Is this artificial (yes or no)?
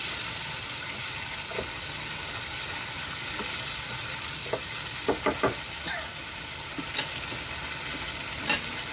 no